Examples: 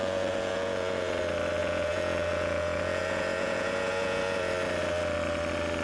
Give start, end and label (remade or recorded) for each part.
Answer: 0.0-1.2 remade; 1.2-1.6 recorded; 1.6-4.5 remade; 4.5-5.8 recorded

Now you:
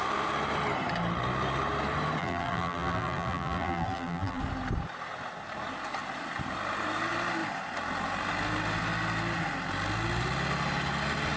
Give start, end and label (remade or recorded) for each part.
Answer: 0.0-2.2 recorded; 2.2-4.4 remade; 4.4-11.4 recorded

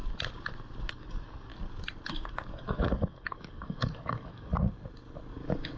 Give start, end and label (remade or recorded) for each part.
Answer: 0.0-0.9 recorded; 0.9-1.5 remade; 1.5-2.1 recorded; 2.1-4.5 remade; 4.5-5.3 recorded; 5.3-5.8 remade